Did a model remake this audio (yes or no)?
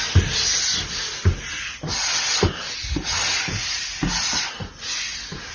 no